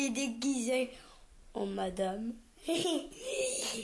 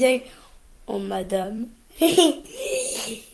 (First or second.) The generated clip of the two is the second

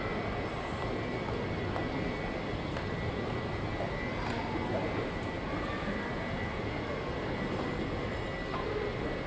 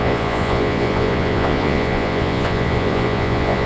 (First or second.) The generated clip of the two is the second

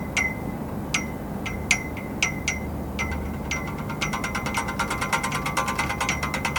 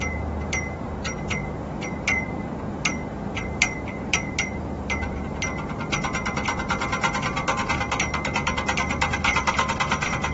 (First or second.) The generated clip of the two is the second